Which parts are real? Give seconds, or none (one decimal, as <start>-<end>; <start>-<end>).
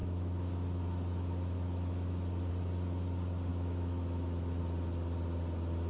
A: 2.5-3.5; 4.6-5.9